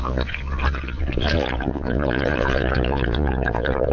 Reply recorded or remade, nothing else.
remade